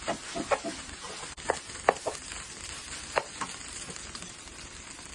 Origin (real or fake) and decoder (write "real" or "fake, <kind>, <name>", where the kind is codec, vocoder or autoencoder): real